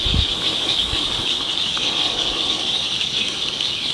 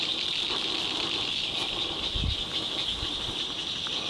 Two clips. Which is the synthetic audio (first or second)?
first